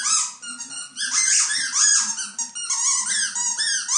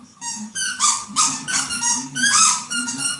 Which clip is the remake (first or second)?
second